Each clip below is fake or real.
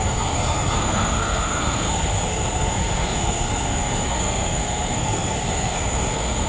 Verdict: fake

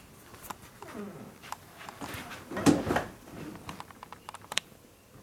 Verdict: fake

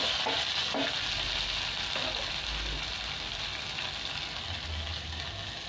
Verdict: real